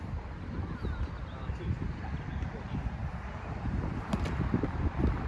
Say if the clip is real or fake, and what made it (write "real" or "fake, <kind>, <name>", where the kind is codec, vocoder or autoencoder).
fake, vocoder, BigVGAN v2